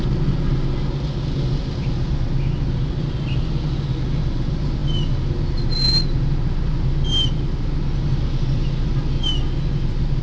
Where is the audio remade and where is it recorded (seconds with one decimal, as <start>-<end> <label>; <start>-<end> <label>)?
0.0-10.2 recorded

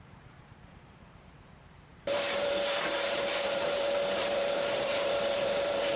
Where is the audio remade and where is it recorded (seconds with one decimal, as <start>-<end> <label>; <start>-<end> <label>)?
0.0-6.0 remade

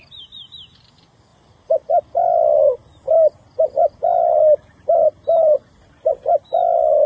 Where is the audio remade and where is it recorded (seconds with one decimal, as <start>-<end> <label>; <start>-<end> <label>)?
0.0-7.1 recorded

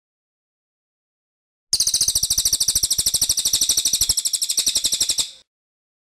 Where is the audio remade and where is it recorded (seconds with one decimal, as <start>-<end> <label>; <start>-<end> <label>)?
0.0-6.1 recorded

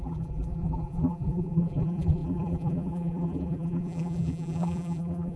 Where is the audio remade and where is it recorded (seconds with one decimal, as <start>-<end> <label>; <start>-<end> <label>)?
0.0-5.4 remade

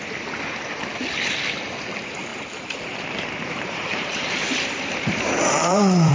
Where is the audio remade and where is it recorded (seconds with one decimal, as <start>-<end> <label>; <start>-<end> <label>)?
0.0-2.3 recorded; 2.3-6.1 remade